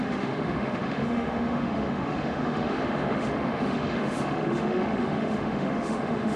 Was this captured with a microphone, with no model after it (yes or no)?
no